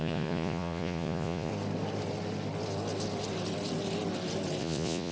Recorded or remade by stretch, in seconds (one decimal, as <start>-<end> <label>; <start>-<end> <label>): 0.0-1.5 remade; 1.5-4.6 recorded; 4.6-5.1 remade